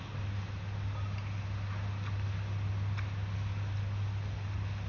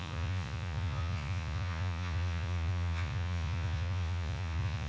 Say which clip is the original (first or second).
first